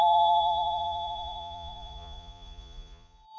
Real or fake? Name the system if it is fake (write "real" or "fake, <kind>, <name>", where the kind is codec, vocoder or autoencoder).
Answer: fake, vocoder, Vocos